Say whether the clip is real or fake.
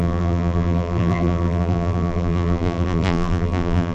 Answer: fake